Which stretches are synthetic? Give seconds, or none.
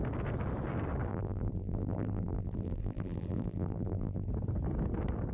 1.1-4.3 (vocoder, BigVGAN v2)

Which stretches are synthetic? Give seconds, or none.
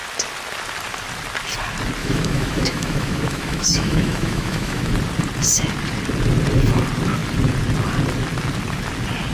2.0-4.9 (autoencoder, DAC-VAE)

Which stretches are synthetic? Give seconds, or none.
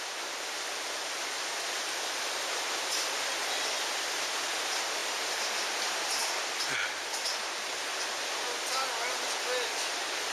none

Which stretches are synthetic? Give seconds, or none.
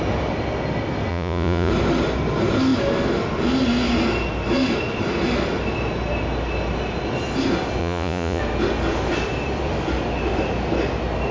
1.1-1.7 (vocoder, Vocos); 7.8-8.4